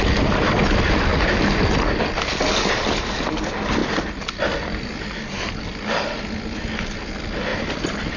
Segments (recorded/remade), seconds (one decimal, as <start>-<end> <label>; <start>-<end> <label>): 0.0-8.2 recorded